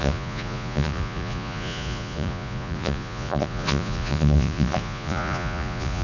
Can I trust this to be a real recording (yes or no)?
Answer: no